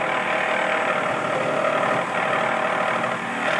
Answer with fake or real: real